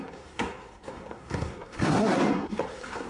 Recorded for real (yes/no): no